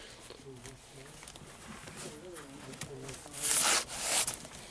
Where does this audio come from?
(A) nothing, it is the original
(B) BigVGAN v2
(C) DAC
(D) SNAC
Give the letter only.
A